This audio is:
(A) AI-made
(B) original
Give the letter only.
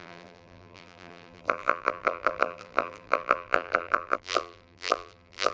A